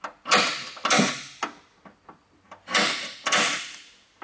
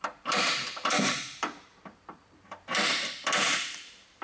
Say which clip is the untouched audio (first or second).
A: first